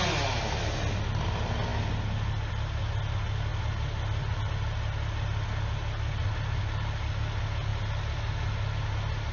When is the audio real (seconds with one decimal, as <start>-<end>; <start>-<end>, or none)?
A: 0.0-9.3